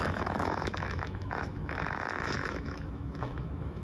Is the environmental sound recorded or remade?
remade